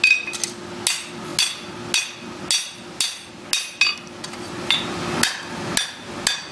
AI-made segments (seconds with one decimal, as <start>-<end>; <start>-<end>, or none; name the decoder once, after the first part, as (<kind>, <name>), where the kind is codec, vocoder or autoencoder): none

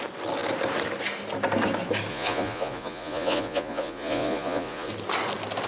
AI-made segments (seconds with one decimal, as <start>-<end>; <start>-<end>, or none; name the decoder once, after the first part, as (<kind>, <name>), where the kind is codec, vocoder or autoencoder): 2.1-4.9 (vocoder, Vocos)

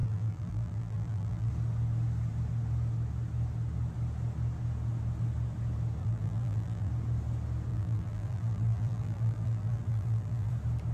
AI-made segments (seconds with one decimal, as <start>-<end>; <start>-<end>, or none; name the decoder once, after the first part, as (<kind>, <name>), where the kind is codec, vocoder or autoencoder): 0.0-1.5 (vocoder, BigVGAN v2); 6.0-6.9; 7.7-10.5

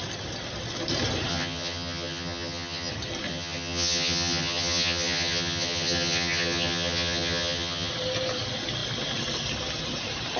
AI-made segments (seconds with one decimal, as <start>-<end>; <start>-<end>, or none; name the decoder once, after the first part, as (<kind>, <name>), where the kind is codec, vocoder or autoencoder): 1.3-2.9 (vocoder, HiFi-GAN); 3.3-7.9